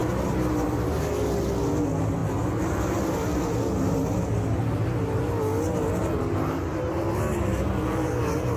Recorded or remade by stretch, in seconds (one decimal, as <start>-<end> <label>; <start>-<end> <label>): 0.0-8.6 recorded